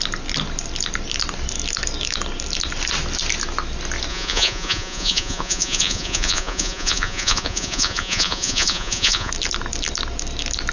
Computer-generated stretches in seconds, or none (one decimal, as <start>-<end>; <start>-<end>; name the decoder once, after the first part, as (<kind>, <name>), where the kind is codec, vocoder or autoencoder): 4.1-9.3 (vocoder, Vocos)